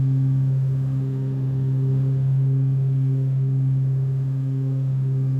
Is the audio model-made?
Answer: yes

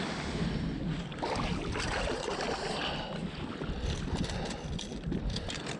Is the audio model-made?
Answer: no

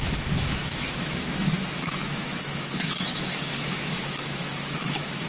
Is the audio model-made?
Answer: yes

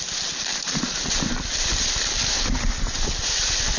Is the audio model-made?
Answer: no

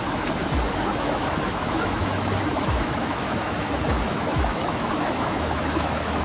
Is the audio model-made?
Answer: yes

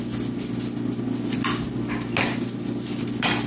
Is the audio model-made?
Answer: no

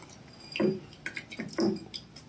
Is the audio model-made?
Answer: no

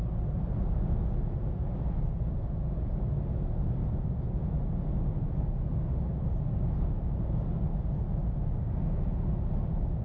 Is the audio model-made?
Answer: no